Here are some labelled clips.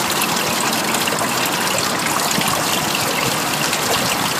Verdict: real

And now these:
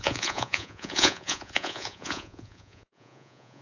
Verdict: fake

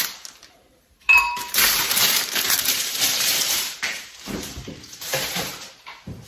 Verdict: fake